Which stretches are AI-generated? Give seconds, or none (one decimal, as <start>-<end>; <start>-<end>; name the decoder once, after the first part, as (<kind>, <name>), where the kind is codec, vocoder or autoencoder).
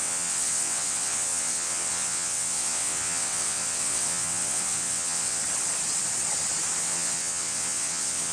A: 0.0-5.4 (vocoder, WaveNeXt); 6.8-8.3